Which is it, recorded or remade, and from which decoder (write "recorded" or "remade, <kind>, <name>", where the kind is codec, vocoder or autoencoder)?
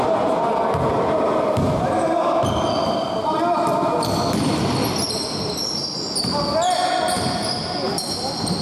recorded